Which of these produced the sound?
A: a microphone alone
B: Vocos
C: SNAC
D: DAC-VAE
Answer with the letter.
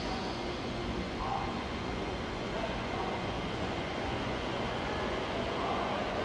B